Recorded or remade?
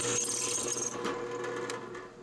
recorded